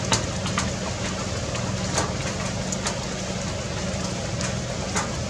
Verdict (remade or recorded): recorded